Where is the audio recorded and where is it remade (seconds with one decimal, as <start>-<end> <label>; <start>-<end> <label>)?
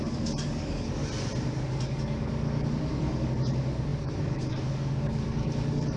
0.0-1.0 remade; 1.0-1.5 recorded; 1.5-6.0 remade